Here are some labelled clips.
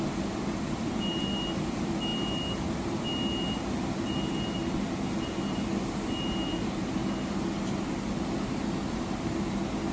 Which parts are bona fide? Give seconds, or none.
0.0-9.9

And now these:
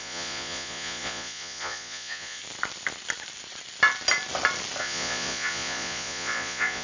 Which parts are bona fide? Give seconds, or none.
2.4-4.8

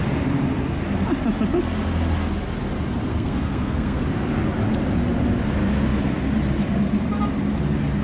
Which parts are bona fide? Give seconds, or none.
0.0-3.1; 4.0-8.0

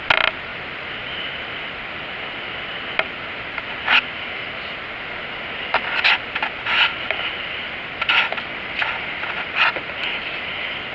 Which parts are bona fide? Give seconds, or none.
0.0-10.9

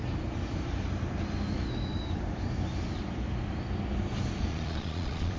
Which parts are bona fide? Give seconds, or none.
0.0-4.5

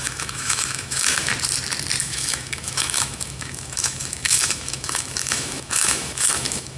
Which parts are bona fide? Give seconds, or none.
1.3-2.0

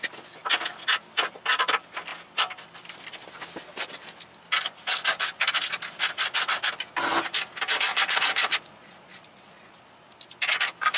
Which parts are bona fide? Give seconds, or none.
0.0-7.9; 9.8-11.0